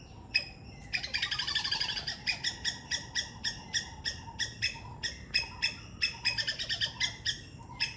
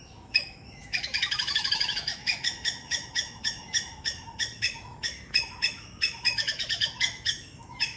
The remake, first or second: second